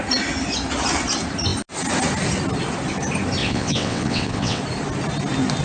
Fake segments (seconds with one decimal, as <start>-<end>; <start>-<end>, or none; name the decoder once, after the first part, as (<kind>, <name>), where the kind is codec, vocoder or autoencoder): 3.4-4.6 (vocoder, WaveNeXt)